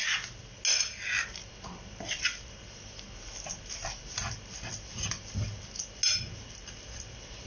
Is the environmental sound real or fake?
real